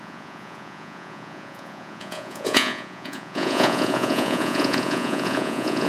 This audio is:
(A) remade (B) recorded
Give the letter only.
A